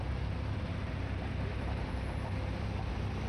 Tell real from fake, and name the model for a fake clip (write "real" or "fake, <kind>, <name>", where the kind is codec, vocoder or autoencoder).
real